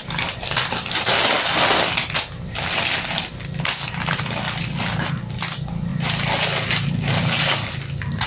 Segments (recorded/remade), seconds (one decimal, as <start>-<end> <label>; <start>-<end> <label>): 0.0-8.3 recorded